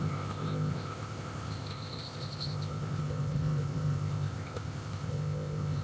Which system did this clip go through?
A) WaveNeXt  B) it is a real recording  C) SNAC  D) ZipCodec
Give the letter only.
D